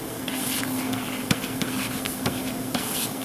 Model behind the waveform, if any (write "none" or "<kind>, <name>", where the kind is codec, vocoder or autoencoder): codec, SNAC